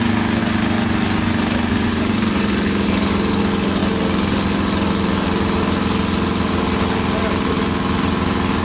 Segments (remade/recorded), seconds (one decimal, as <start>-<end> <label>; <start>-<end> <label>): 0.0-0.4 recorded; 0.4-3.4 remade; 3.4-8.6 recorded